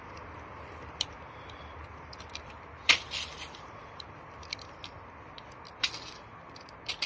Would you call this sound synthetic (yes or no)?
no